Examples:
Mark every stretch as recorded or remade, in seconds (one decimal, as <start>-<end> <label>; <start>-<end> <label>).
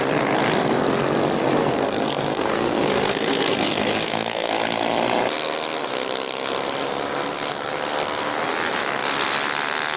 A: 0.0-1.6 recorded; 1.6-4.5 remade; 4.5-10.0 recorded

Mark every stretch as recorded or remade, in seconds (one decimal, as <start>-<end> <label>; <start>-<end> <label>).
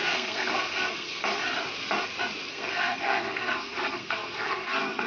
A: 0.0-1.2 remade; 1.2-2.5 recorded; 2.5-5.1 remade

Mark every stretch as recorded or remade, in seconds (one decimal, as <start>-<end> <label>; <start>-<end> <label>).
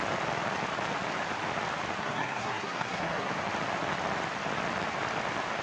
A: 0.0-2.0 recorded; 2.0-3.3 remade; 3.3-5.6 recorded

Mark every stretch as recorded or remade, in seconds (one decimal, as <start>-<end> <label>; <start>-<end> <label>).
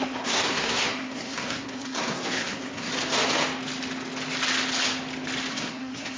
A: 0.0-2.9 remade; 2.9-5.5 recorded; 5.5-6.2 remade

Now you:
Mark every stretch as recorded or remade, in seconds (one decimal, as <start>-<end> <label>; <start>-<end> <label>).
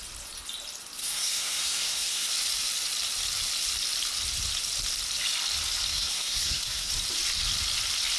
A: 0.0-1.0 recorded; 1.0-2.3 remade; 2.3-5.9 recorded; 5.9-6.9 remade; 6.9-8.2 recorded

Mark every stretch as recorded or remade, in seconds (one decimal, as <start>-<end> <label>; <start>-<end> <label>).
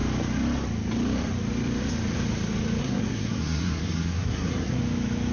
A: 0.0-2.8 recorded; 2.8-4.8 remade; 4.8-5.3 recorded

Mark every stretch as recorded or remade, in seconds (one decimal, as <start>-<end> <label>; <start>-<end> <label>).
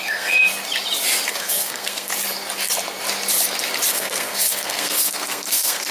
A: 0.0-0.5 remade; 0.5-1.3 recorded; 1.3-2.1 remade; 2.1-3.9 recorded; 3.9-5.9 remade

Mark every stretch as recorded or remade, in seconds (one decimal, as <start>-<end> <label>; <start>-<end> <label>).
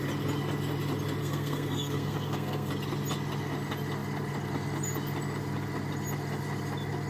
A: 0.0-1.2 recorded; 1.2-2.7 remade; 2.7-7.1 recorded